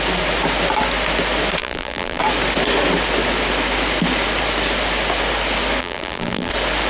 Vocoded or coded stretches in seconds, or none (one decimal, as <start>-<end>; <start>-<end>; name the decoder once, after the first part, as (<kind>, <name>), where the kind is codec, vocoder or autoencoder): 1.6-2.2 (vocoder, BigVGAN v2); 5.8-6.5